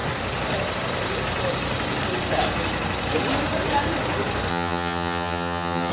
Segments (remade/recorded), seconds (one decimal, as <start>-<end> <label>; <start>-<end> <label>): 0.0-4.5 recorded; 4.5-5.9 remade